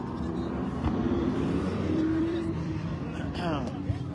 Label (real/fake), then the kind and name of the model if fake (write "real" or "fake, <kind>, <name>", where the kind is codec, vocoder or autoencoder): fake, vocoder, BigVGAN v2